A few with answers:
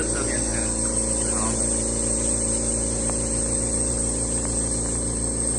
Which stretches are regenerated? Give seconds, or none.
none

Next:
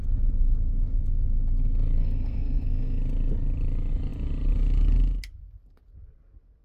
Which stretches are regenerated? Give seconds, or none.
2.0-3.0 (codec, SNAC)

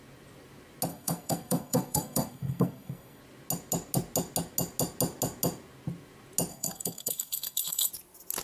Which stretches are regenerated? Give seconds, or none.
0.9-3.2 (codec, SNAC); 6.5-7.9

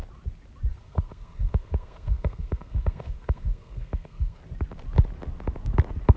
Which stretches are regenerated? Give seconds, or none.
0.7-4.4 (codec, SNAC)

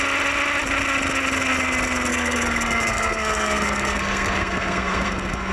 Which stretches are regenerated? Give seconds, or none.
2.1-5.5 (codec, SNAC)

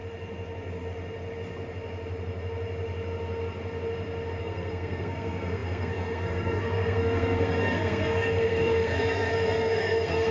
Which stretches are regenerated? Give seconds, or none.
4.4-10.3 (codec, SNAC)

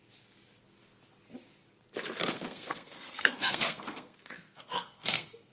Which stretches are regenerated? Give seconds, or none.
2.2-5.5 (codec, SNAC)